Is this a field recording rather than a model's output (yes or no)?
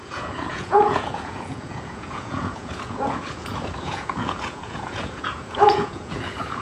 no